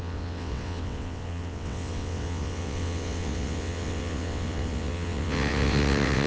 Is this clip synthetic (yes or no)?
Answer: yes